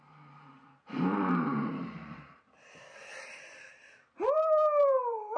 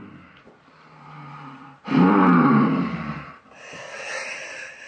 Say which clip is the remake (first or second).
first